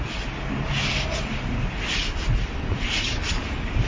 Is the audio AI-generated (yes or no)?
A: no